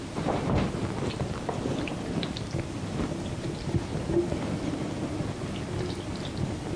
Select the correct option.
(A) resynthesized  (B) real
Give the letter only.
B